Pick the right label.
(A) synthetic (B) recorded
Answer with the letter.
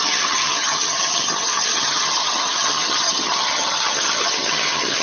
A